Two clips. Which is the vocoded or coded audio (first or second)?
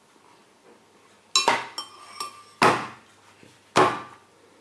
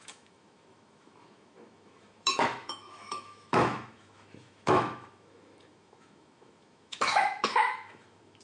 second